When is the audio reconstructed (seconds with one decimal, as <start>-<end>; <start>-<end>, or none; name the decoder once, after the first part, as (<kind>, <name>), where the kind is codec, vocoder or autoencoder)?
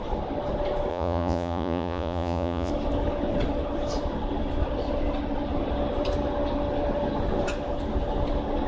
0.9-2.7 (vocoder, Vocos)